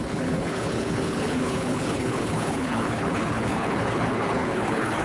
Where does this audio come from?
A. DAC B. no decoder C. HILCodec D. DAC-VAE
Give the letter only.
C